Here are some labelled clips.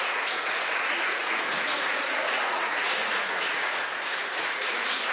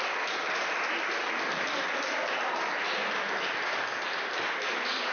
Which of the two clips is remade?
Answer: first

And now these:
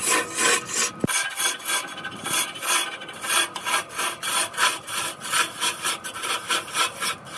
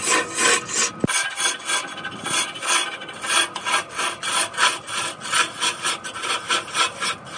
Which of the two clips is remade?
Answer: first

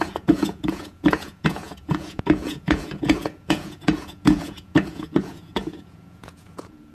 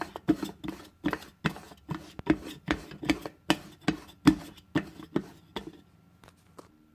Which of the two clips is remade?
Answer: first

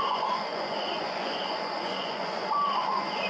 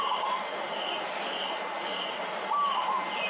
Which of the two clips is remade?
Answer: first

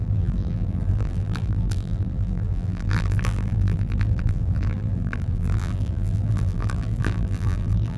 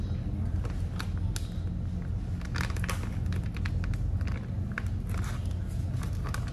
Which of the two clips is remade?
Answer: first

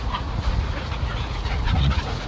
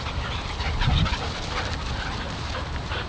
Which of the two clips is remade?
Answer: first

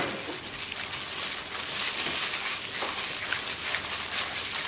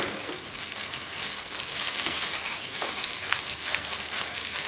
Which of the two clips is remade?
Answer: second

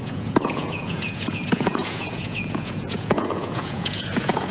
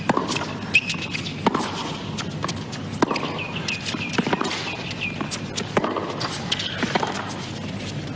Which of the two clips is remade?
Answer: first